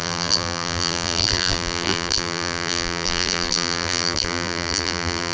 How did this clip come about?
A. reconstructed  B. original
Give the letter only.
A